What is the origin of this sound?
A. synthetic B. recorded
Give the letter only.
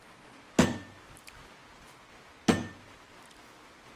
B